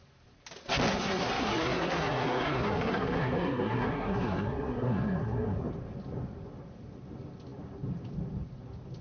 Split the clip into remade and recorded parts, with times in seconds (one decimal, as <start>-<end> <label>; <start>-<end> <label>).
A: 0.0-0.9 recorded; 0.9-5.7 remade; 5.7-9.0 recorded